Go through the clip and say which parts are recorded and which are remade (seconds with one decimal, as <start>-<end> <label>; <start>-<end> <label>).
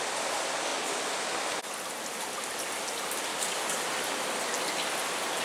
0.0-3.3 recorded; 3.3-3.8 remade; 3.8-5.4 recorded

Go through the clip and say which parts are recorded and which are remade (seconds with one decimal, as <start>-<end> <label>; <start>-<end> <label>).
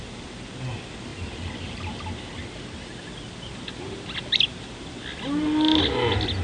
0.0-6.4 recorded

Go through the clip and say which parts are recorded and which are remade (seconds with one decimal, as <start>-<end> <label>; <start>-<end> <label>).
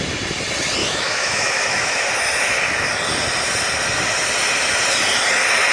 0.0-0.8 recorded; 0.8-2.0 remade; 2.0-5.7 recorded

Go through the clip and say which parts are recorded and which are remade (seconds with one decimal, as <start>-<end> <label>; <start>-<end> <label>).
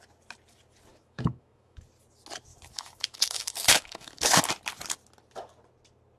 0.0-0.9 recorded; 0.9-1.8 remade; 1.8-2.5 recorded; 2.5-4.4 remade; 4.4-6.2 recorded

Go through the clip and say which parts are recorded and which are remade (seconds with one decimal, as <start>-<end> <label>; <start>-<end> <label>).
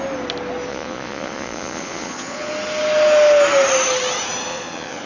0.0-0.7 recorded; 0.7-2.5 remade; 2.5-4.5 recorded; 4.5-5.1 remade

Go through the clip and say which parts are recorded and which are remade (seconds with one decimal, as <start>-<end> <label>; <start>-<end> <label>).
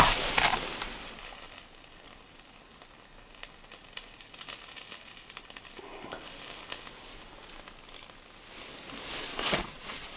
0.0-9.3 recorded; 9.3-10.2 remade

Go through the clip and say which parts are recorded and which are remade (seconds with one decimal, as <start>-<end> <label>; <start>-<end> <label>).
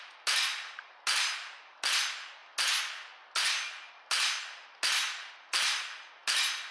0.0-6.7 recorded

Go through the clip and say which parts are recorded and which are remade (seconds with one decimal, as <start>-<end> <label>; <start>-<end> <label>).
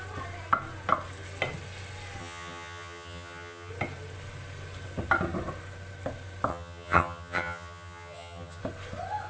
0.0-2.2 recorded; 2.2-3.7 remade; 3.7-6.5 recorded; 6.5-8.6 remade; 8.6-9.3 recorded